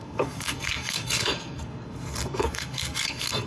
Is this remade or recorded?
remade